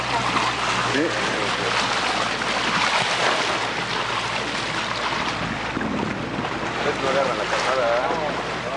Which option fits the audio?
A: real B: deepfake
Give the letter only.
A